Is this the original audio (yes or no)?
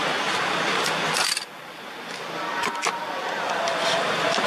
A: yes